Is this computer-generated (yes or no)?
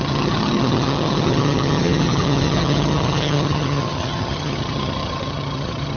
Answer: yes